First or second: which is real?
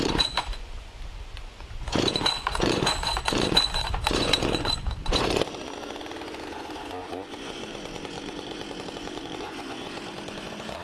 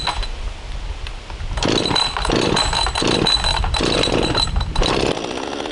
second